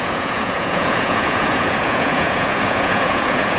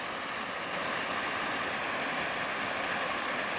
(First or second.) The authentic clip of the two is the second